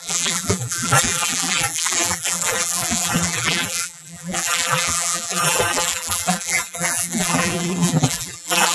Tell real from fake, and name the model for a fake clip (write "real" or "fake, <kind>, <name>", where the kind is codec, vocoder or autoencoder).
fake, vocoder, BigVGAN v2